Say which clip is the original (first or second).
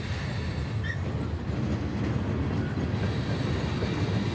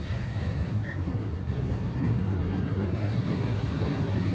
first